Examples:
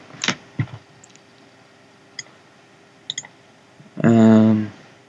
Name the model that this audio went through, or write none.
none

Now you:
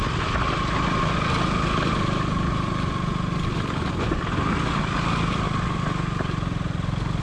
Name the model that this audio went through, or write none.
none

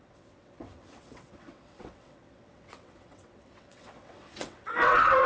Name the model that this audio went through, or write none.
vocoder, WaveNeXt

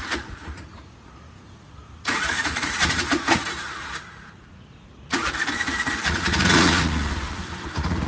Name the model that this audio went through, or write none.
vocoder, Vocos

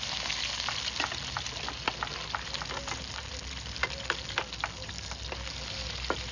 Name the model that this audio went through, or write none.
none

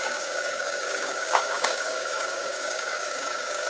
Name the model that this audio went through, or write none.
codec, DAC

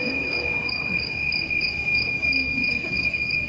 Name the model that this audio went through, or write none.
codec, DAC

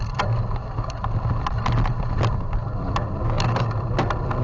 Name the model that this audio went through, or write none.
none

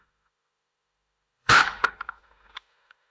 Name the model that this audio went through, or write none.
autoencoder, DAC-VAE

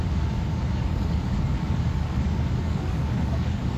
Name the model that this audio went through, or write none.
codec, DAC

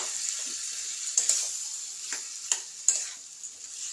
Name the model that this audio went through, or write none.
none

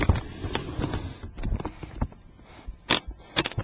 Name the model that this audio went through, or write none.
none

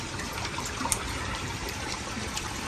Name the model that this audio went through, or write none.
vocoder, BigVGAN v2